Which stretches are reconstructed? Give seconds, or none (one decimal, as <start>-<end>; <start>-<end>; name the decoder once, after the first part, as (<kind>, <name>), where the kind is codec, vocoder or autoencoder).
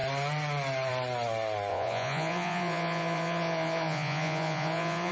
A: 1.7-5.1 (vocoder, Vocos)